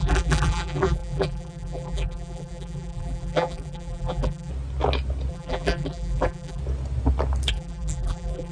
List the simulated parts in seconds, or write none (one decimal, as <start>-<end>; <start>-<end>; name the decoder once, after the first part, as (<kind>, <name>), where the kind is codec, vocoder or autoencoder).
0.0-4.5 (vocoder, BigVGAN v2); 5.3-6.6; 7.5-8.5